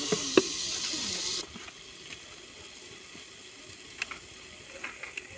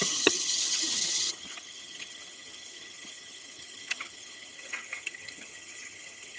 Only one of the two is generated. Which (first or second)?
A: second